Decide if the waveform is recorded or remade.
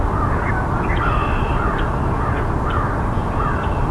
recorded